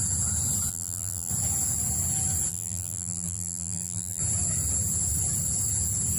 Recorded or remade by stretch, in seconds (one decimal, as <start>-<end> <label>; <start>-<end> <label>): 0.0-0.7 recorded; 0.7-1.3 remade; 1.3-2.5 recorded; 2.5-4.2 remade; 4.2-6.2 recorded